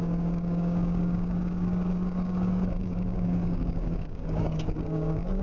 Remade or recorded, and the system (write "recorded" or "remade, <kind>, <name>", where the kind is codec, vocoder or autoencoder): remade, codec, DAC